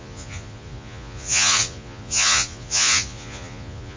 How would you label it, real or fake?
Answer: fake